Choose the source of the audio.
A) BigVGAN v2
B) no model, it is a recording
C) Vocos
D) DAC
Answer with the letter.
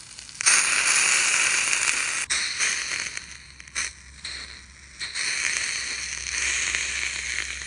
B